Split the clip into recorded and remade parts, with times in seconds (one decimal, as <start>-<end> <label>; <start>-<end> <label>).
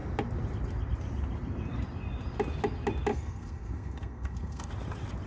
0.0-3.1 recorded; 3.1-4.7 remade; 4.7-5.3 recorded